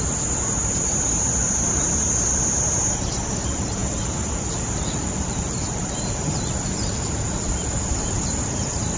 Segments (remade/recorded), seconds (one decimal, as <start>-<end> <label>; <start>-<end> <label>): 0.0-1.4 recorded; 1.4-2.4 remade; 2.4-3.8 recorded; 3.8-5.9 remade; 5.9-9.0 recorded